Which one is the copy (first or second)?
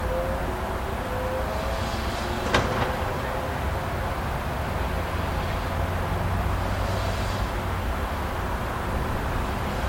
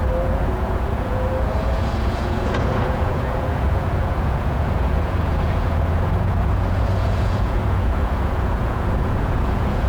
second